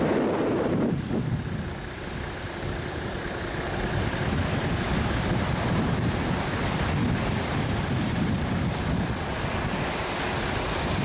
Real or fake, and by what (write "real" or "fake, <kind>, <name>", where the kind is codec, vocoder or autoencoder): real